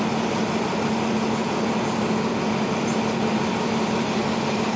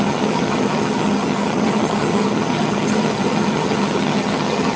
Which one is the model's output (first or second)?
second